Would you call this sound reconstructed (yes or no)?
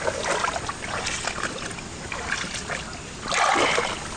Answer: no